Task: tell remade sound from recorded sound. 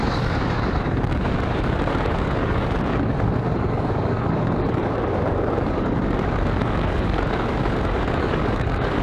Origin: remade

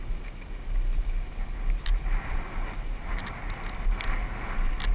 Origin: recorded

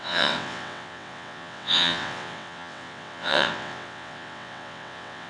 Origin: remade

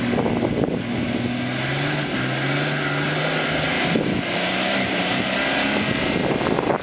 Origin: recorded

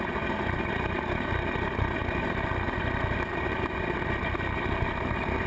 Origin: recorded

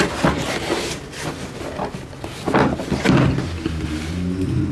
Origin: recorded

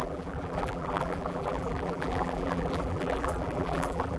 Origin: remade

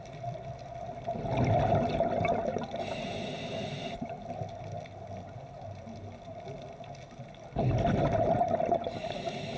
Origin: recorded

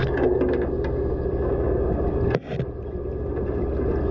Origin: recorded